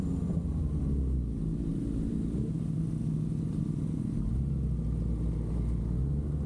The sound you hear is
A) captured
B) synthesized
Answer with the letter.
A